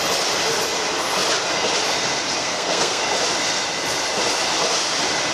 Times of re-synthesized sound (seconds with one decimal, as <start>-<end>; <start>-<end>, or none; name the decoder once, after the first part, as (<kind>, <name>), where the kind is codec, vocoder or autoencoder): 2.4-3.0 (codec, SNAC)